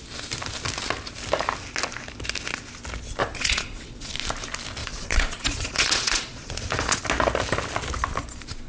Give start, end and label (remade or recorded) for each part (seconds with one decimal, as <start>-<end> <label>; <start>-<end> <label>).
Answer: 0.0-3.2 recorded; 3.2-4.1 remade; 4.1-4.8 recorded; 4.8-7.0 remade; 7.0-8.7 recorded